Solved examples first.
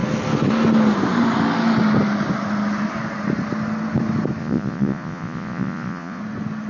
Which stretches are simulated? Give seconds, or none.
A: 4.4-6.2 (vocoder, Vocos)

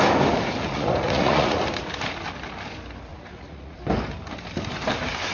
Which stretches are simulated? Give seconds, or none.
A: 0.7-1.6 (vocoder, Vocos); 3.1-3.8

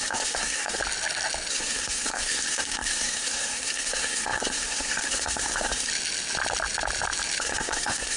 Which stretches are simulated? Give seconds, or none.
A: 0.0-0.8 (codec, SNAC); 1.5-5.9; 7.4-8.2

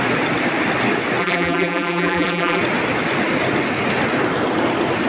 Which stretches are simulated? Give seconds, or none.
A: 1.2-2.6 (vocoder, BigVGAN v2)

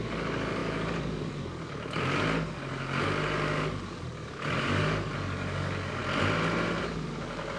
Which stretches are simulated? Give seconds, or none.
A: 0.0-6.0 (codec, DAC); 6.8-7.6

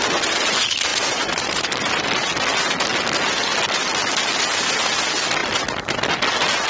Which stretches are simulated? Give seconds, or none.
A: 0.9-2.1 (vocoder, BigVGAN v2)

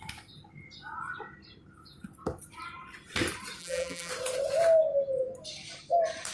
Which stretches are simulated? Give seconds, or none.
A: 3.6-4.1 (vocoder, BigVGAN v2)